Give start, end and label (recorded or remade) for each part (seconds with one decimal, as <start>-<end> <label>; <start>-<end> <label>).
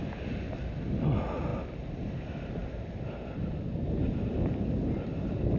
0.0-5.6 recorded